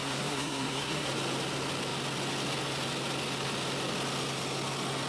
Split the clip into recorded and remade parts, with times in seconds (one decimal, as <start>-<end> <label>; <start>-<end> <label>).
0.0-1.1 remade; 1.1-5.1 recorded